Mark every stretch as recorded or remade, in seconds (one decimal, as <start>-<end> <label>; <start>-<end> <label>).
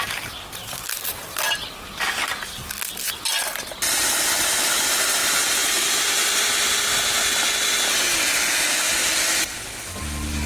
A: 0.0-10.5 recorded